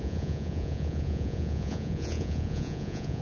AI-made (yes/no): yes